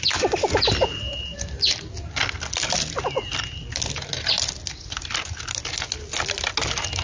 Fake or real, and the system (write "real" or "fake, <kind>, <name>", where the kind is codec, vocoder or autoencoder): real